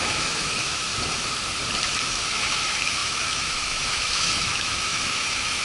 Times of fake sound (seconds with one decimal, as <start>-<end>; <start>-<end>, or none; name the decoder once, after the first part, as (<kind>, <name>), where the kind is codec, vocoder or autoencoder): 0.0-0.9 (autoencoder, DAC-VAE); 2.0-5.6